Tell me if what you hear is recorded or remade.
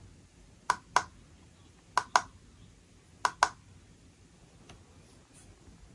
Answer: recorded